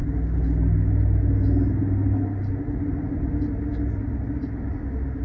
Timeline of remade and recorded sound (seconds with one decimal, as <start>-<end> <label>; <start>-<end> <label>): 0.0-5.2 recorded